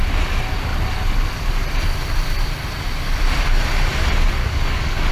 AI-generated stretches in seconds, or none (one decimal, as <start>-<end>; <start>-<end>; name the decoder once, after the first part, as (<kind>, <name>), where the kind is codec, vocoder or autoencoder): 4.4-5.1 (codec, DAC)